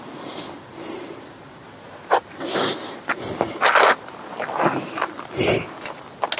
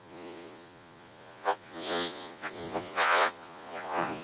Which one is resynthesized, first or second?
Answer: second